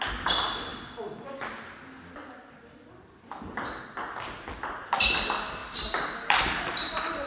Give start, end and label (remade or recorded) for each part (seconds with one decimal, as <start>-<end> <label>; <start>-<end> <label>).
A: 0.0-5.6 recorded; 5.6-7.3 remade